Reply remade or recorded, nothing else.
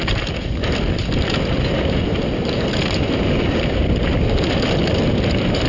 recorded